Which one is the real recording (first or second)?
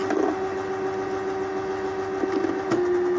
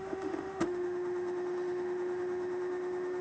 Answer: first